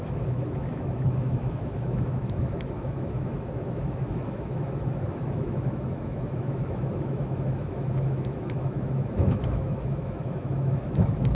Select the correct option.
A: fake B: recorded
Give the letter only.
A